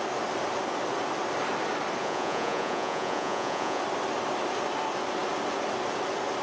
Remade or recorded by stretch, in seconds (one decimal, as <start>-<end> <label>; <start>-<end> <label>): 0.0-2.0 recorded; 2.0-3.8 remade; 3.8-6.4 recorded